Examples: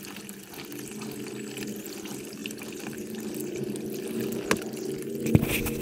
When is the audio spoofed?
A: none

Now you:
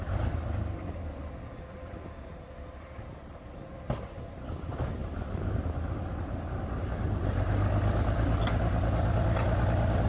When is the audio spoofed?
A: none

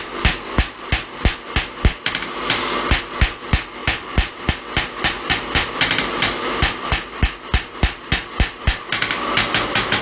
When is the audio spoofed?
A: 3.8-4.5 (vocoder, BigVGAN v2)

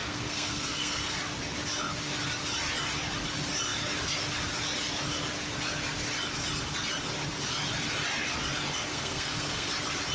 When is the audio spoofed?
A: 0.0-1.2 (codec, SNAC); 8.9-9.7